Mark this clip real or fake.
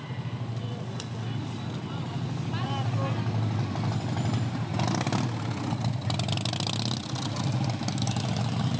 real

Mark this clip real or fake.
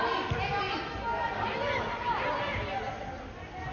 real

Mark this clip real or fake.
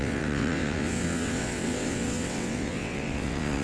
fake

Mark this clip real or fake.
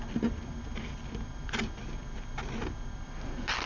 real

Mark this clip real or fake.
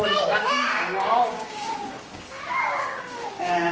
fake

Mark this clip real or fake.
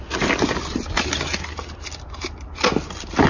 real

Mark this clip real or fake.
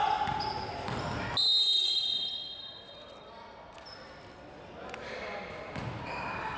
real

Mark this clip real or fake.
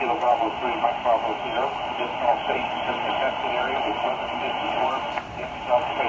fake